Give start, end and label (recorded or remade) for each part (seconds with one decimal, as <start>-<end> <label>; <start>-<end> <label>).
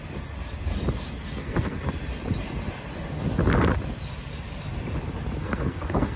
0.0-1.4 recorded; 1.4-1.9 remade; 1.9-5.4 recorded; 5.4-6.2 remade